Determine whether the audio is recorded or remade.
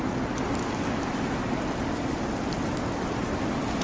recorded